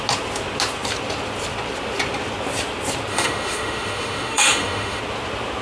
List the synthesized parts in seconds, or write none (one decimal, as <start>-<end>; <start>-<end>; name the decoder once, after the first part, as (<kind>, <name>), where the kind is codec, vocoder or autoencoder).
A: 3.1-5.0 (autoencoder, DAC-VAE)